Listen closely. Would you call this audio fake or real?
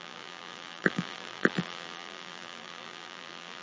fake